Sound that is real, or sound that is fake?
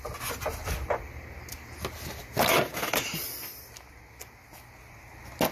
real